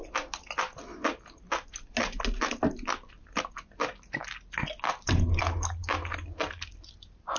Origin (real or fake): real